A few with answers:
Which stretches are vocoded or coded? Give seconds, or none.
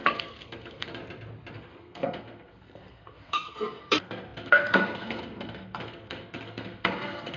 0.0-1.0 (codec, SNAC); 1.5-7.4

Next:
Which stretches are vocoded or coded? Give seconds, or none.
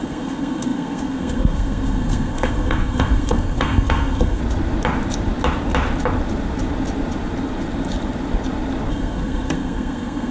0.0-4.4 (codec, SNAC); 8.9-10.3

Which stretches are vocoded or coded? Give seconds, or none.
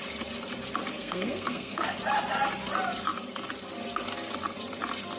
0.9-2.0 (codec, SNAC)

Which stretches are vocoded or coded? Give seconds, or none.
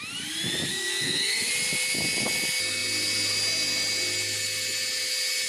0.7-1.5 (codec, SNAC)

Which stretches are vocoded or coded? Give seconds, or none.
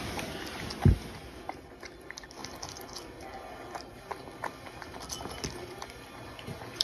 none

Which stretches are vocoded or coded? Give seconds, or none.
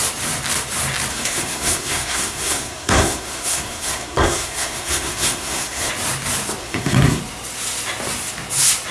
1.1-5.9 (codec, SNAC); 6.6-7.2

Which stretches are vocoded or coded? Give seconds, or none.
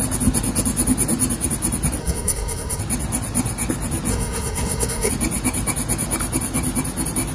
2.0-2.8 (codec, SNAC); 4.1-5.1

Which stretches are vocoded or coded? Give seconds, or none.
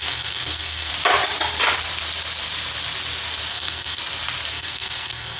0.0-0.9 (codec, SNAC); 3.5-4.0; 4.5-5.4